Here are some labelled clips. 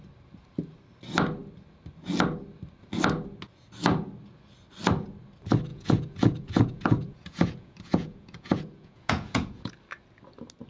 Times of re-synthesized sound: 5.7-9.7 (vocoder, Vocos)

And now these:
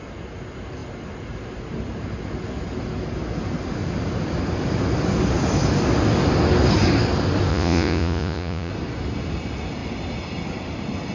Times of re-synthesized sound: 7.5-8.7 (vocoder, Vocos)

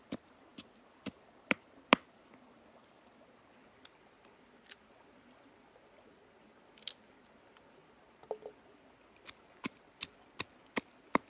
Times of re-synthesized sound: none

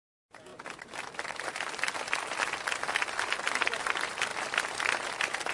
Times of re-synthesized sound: none

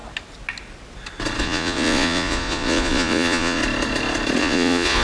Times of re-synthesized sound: 1.4-3.6 (vocoder, Vocos); 4.4-5.0